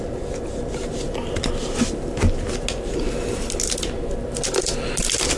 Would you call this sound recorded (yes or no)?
yes